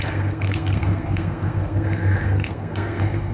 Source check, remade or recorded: remade